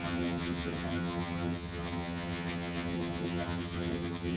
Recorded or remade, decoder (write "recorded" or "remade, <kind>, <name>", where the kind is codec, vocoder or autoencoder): remade, vocoder, HiFi-GAN